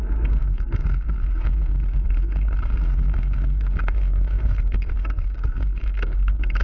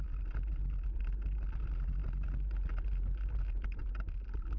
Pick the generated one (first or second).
first